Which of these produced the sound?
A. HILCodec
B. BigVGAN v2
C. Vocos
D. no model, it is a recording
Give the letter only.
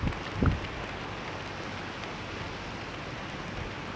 D